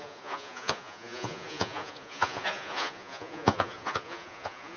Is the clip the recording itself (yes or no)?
no